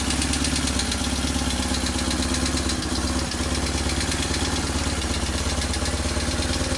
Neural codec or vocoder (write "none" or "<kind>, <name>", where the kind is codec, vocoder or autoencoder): none